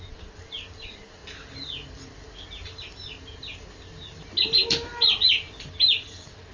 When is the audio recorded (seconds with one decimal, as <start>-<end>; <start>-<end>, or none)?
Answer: 0.0-6.5